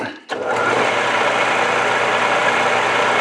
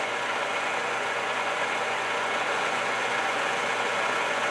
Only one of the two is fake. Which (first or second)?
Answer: second